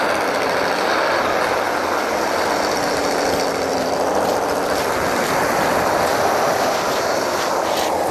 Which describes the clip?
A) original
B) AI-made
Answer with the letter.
A